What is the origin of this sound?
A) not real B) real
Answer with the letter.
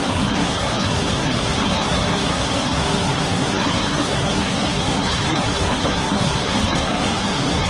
A